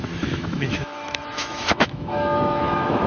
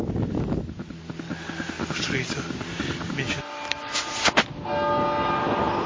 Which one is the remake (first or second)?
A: first